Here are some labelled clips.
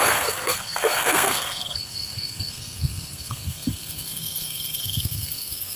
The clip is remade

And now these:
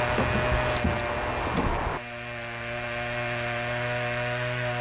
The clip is recorded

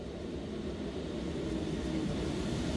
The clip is recorded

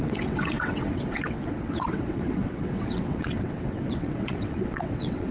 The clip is remade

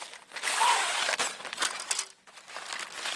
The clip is recorded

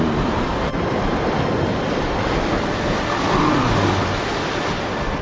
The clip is recorded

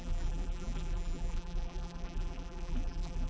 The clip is remade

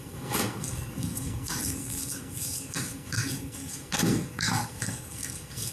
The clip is remade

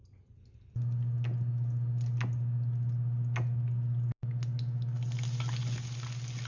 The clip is recorded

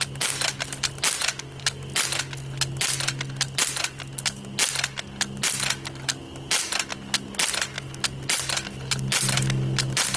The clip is recorded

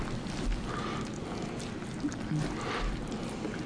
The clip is recorded